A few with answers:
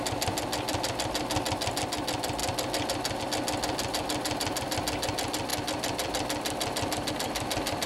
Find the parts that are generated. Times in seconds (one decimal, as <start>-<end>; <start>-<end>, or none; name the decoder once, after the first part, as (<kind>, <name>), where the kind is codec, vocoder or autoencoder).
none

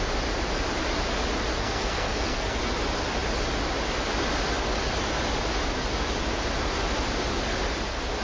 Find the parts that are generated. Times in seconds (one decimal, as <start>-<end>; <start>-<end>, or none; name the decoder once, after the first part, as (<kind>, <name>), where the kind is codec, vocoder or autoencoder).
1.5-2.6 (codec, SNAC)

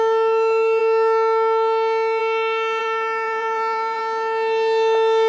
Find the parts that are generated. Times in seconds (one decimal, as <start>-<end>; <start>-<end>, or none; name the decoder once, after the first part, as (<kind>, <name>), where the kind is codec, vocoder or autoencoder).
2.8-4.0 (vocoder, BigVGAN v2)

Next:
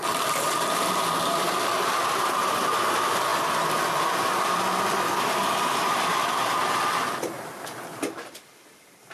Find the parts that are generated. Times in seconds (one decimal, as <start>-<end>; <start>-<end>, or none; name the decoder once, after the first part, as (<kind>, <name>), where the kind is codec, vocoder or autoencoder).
0.0-3.3 (vocoder, BigVGAN v2); 5.2-6.6; 7.1-9.1

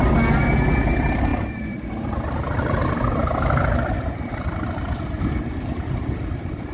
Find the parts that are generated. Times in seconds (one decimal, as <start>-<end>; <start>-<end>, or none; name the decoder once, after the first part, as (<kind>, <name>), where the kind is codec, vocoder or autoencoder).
1.3-4.3 (vocoder, BigVGAN v2)

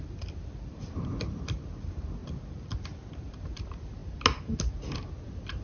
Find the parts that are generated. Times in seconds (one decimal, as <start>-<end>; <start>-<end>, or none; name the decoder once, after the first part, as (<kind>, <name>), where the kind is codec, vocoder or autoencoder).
0.0-4.0 (vocoder, BigVGAN v2); 5.1-5.6

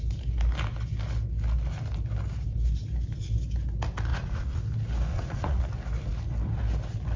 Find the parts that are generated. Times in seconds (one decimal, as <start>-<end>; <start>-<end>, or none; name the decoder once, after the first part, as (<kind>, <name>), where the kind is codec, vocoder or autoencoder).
4.1-4.6 (vocoder, Vocos); 5.1-5.6

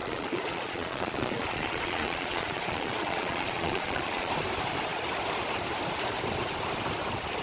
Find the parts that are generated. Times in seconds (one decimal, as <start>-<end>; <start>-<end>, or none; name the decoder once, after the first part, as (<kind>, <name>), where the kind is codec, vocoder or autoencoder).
0.0-4.3 (vocoder, Vocos)